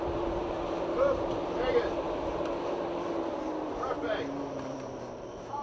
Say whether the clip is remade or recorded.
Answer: remade